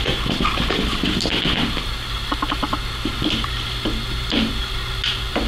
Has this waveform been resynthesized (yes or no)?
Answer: no